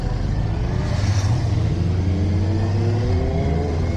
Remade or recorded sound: recorded